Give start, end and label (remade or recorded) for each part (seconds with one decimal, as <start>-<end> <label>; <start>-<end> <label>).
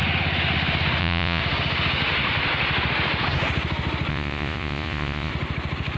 0.0-1.0 recorded; 1.0-1.4 remade; 1.4-4.1 recorded; 4.1-5.3 remade; 5.3-6.0 recorded